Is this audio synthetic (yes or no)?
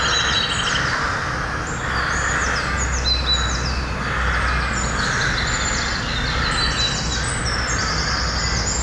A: no